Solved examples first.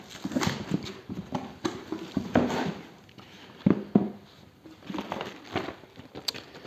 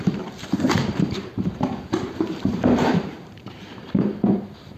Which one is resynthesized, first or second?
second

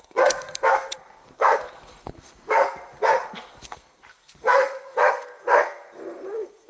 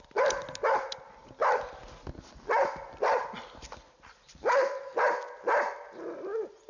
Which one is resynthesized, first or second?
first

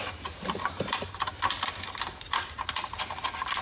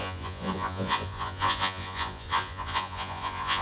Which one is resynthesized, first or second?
second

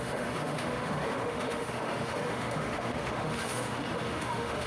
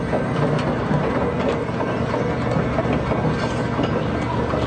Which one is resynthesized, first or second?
first